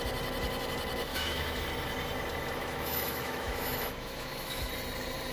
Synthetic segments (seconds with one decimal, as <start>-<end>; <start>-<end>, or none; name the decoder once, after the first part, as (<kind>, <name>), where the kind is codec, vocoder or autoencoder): 1.1-1.6 (autoencoder, DAC-VAE); 2.6-4.7